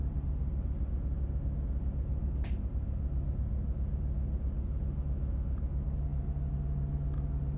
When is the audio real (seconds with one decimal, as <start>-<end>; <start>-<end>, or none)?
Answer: 0.0-2.2; 3.0-7.6